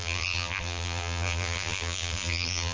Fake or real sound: fake